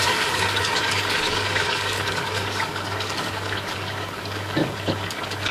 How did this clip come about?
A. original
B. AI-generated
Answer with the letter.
B